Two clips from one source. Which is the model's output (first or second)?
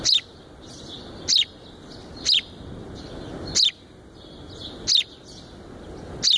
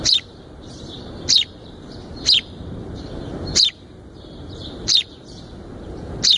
second